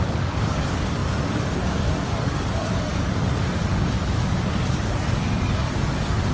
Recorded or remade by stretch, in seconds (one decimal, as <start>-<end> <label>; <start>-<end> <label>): 0.0-6.3 remade